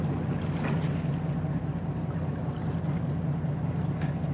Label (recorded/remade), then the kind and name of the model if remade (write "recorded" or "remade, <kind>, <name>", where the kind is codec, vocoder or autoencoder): recorded